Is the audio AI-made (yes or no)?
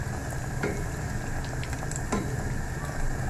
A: no